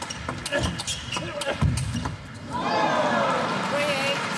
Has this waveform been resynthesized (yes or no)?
no